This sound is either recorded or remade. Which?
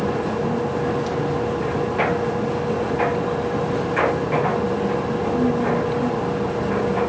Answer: recorded